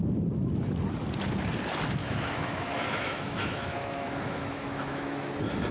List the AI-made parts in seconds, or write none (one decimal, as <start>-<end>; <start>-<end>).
2.0-5.3